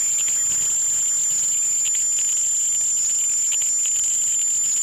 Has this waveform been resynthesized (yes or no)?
no